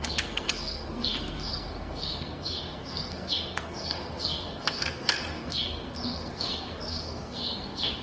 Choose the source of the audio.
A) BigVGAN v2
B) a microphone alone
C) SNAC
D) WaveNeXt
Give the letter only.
C